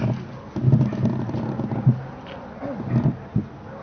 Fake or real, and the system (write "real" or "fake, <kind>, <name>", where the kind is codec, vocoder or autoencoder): real